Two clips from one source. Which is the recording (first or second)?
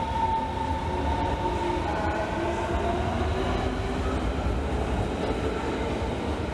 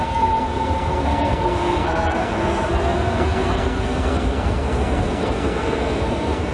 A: first